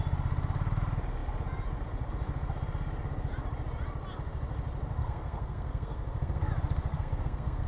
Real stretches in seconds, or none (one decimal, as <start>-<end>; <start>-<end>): 0.0-5.0; 6.5-6.9